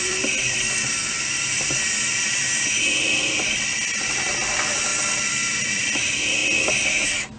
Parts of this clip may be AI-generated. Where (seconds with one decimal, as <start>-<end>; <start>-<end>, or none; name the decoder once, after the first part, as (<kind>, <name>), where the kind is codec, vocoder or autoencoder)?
0.0-4.9 (vocoder, BigVGAN v2); 5.6-6.4